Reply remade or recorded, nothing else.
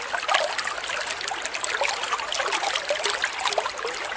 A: recorded